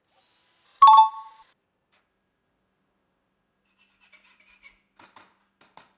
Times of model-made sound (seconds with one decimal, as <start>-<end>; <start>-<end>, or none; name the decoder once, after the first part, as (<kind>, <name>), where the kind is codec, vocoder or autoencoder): none